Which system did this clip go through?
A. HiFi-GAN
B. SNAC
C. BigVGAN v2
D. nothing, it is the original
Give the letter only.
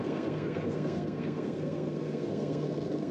B